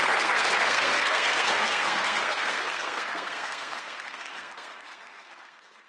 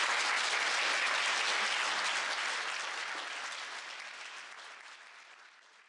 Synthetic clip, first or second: first